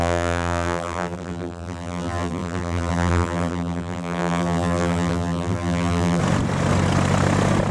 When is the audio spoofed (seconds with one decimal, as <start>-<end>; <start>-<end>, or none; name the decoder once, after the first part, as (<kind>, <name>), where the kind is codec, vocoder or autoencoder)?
0.0-6.2 (vocoder, BigVGAN v2)